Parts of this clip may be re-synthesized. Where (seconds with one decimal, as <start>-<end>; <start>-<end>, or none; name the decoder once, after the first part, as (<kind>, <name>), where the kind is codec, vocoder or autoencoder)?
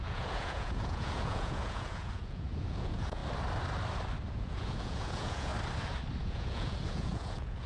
0.0-3.2 (vocoder, Vocos); 4.3-5.5; 6.2-7.7